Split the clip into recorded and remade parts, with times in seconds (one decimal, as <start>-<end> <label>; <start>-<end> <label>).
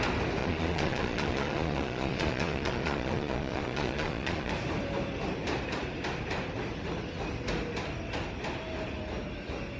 0.0-0.4 recorded; 0.4-4.5 remade; 4.5-9.8 recorded